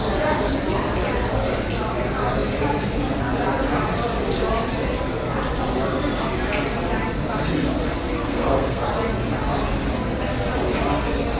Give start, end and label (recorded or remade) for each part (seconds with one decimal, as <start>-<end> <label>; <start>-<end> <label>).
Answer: 0.0-8.0 recorded; 8.0-8.9 remade; 8.9-11.4 recorded